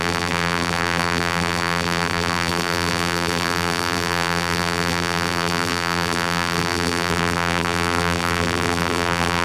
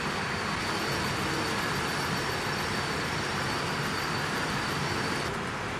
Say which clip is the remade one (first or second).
first